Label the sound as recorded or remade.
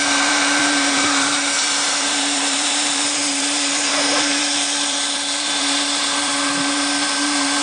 remade